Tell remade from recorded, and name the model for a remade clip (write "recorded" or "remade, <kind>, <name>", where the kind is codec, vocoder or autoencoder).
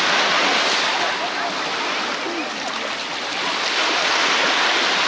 recorded